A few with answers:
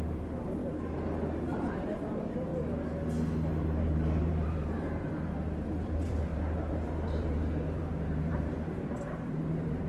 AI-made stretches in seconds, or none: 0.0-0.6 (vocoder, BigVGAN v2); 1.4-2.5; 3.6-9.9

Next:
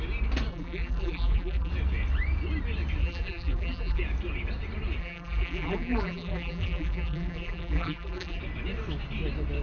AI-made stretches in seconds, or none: 0.5-1.7 (vocoder, BigVGAN v2); 3.0-4.0; 5.0-8.4

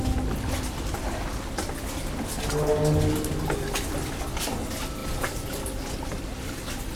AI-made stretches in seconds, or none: 5.0-5.6 (vocoder, BigVGAN v2)